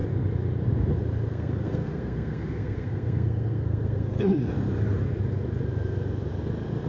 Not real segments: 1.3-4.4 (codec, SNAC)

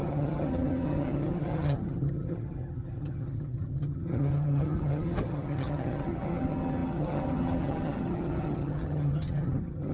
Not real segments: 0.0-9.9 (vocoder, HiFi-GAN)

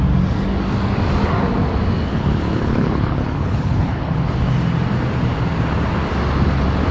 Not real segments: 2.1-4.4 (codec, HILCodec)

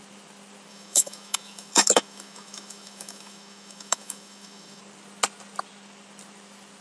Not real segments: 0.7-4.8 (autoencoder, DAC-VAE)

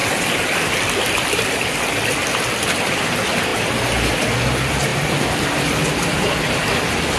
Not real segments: 0.0-3.0 (vocoder, BigVGAN v2); 4.9-6.4